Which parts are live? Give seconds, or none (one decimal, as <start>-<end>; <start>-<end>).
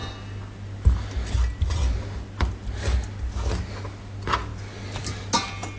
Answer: 0.0-5.8